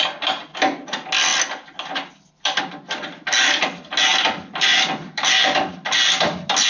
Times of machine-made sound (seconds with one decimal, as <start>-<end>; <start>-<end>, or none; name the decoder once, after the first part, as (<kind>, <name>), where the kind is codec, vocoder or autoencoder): none